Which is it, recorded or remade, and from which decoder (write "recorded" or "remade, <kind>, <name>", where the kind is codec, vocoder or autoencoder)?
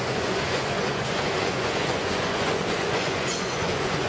remade, vocoder, Vocos